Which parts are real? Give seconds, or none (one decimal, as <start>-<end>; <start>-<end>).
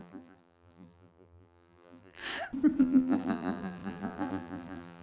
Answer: 2.2-2.8